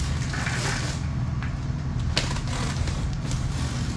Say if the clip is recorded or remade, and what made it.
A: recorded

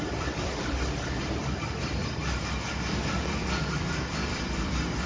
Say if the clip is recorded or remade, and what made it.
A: remade, vocoder, BigVGAN v2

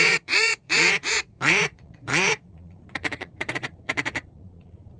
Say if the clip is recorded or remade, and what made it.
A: remade, vocoder, Vocos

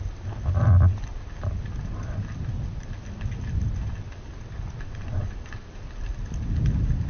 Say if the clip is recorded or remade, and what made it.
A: recorded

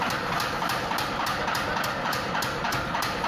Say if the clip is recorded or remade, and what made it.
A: recorded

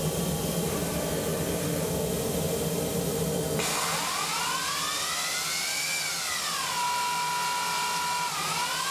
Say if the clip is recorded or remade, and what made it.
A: recorded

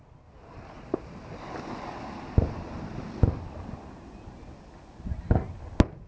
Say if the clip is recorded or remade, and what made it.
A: recorded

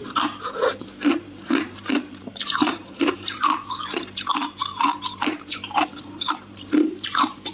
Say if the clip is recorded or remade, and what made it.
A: remade, vocoder, BigVGAN v2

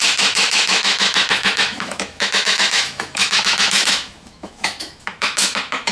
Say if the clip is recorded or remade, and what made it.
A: remade, autoencoder, DAC-VAE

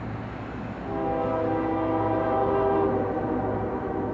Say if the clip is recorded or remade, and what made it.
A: recorded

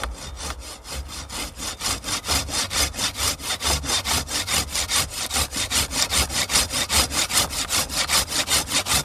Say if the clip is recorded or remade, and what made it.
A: recorded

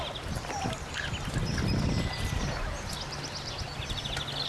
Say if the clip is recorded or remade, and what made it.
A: recorded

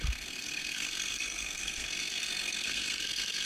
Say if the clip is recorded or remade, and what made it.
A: remade, codec, SNAC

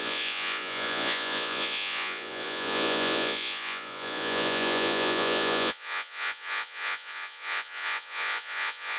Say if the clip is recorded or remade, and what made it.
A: remade, vocoder, Vocos